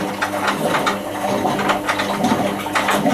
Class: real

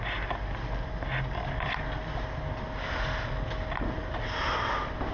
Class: real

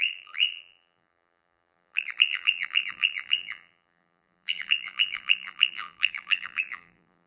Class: fake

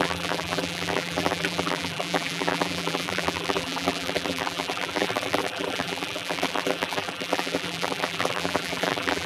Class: fake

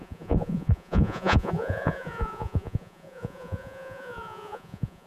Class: fake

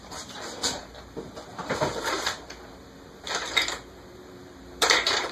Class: fake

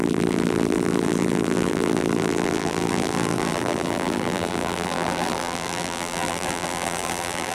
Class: fake